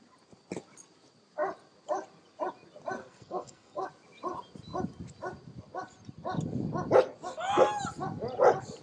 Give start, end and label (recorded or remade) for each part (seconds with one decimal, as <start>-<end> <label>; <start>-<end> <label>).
0.0-3.0 recorded; 3.0-3.9 remade; 3.9-8.8 recorded